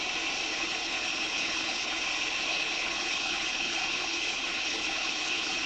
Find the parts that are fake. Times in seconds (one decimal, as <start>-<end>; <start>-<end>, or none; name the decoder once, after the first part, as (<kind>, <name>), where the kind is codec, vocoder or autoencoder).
0.5-2.0 (codec, HILCodec); 2.5-5.7